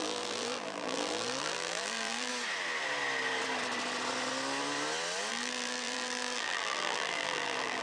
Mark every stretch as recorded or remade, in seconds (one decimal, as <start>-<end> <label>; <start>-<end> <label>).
0.0-2.3 remade; 2.3-5.3 recorded; 5.3-7.8 remade